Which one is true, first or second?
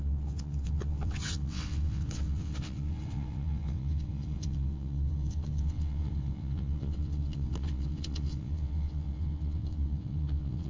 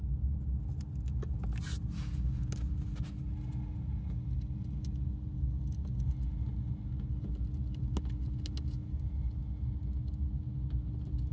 second